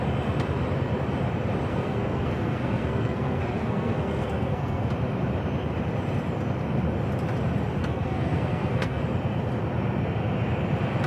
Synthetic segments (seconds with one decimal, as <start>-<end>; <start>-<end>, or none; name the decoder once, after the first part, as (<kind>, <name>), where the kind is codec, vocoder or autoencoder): 1.7-4.9 (codec, SNAC); 7.8-9.0